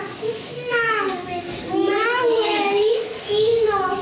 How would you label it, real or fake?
fake